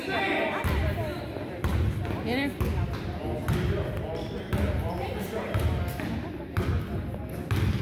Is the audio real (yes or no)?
yes